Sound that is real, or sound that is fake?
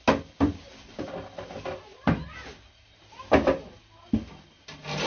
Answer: real